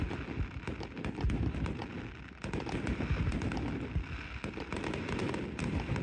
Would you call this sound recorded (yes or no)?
yes